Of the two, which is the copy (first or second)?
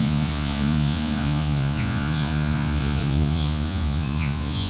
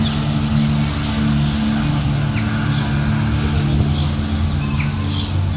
first